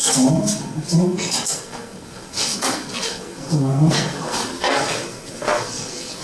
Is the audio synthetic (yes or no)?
yes